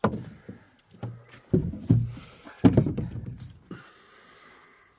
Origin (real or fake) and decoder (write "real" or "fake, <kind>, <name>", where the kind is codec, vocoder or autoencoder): real